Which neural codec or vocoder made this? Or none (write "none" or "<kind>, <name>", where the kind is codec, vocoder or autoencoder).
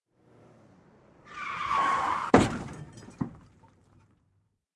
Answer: vocoder, BigVGAN v2